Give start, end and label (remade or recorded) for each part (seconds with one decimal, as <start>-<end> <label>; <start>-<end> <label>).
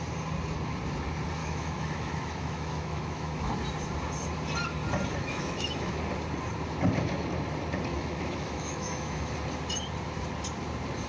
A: 0.0-1.4 recorded; 1.4-3.5 remade; 3.5-5.2 recorded; 5.2-6.0 remade; 6.0-7.9 recorded; 7.9-9.3 remade; 9.3-11.1 recorded